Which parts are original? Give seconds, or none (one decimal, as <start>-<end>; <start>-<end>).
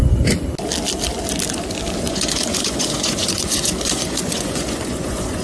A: 0.0-2.1